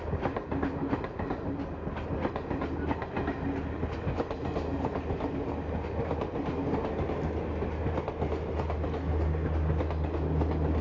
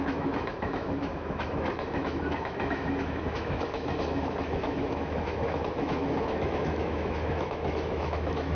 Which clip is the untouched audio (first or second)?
first